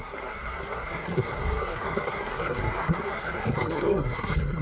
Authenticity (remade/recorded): remade